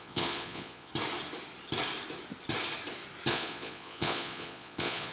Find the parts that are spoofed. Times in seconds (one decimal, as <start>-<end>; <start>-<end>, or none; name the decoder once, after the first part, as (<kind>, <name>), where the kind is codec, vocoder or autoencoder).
0.0-0.9 (vocoder, Vocos); 3.3-5.1